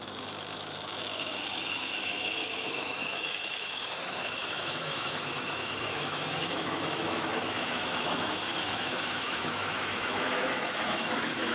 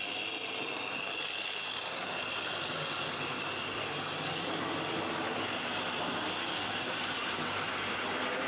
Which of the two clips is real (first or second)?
second